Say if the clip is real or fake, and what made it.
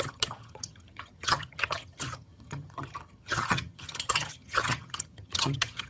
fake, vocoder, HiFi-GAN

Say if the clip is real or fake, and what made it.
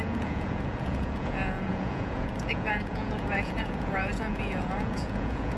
fake, vocoder, Vocos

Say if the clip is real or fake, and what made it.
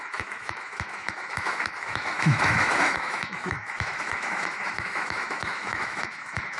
fake, autoencoder, DAC-VAE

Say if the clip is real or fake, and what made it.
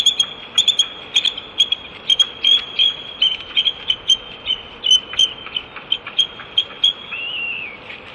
fake, vocoder, BigVGAN v2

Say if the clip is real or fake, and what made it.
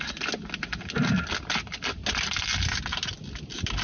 real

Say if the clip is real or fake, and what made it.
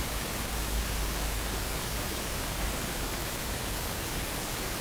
fake, codec, DAC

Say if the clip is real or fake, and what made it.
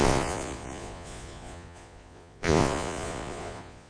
fake, vocoder, Vocos